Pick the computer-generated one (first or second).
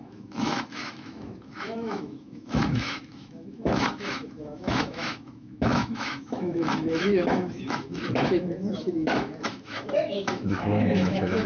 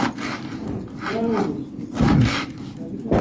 first